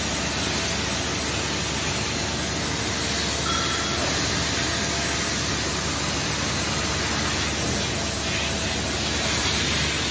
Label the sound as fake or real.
real